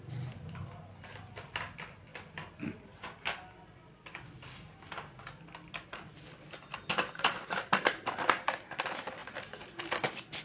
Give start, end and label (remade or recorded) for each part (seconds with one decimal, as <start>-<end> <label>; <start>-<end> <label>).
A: 0.0-10.4 recorded